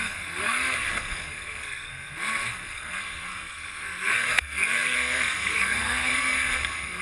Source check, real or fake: fake